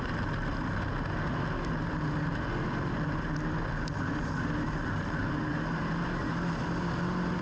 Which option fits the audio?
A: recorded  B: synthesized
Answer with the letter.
A